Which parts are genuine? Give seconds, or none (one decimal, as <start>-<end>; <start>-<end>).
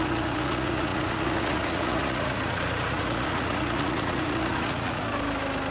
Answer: 5.0-5.7